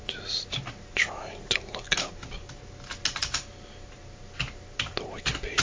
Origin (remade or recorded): recorded